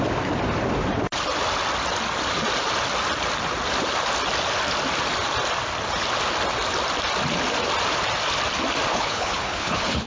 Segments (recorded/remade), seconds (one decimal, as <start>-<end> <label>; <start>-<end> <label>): 0.0-8.9 recorded; 8.9-10.1 remade